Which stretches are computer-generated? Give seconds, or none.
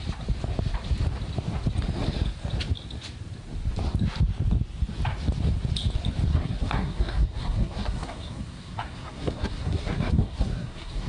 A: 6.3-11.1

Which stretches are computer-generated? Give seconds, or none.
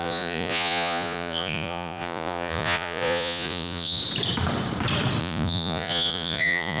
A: 0.0-4.0; 5.2-6.8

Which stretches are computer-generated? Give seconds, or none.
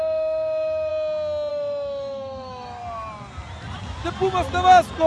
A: 0.0-0.9; 1.5-2.8